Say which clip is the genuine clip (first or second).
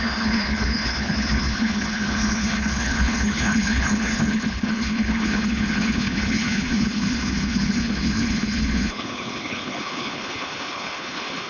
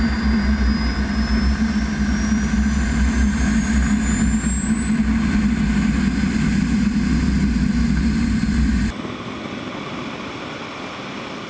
second